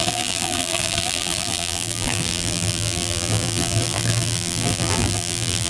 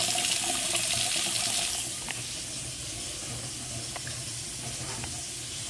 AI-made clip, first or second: first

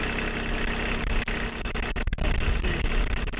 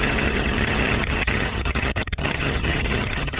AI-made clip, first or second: second